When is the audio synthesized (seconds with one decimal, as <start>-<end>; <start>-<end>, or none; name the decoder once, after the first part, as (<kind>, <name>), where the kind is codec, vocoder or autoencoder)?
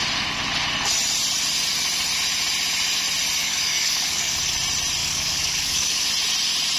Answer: 3.4-4.3 (codec, DAC); 5.0-6.1